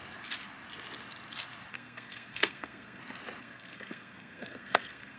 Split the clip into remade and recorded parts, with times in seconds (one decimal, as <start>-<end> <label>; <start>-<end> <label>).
0.0-1.7 recorded; 1.7-3.0 remade; 3.0-3.4 recorded; 3.4-5.2 remade